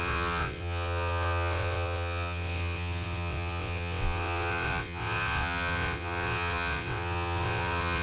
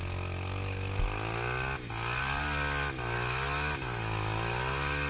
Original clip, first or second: second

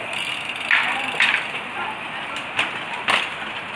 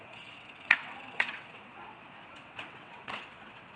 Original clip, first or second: first